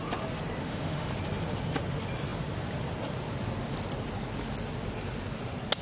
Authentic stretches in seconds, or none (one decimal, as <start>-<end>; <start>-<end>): 0.0-0.6; 1.1-5.8